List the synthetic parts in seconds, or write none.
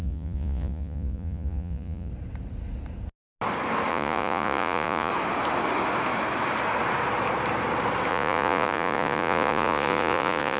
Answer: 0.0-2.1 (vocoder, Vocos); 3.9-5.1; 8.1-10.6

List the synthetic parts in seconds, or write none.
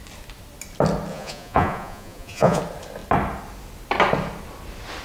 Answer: 1.1-2.6 (vocoder, Vocos)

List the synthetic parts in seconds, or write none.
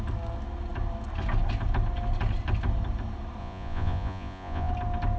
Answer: 3.4-4.7 (vocoder, Vocos)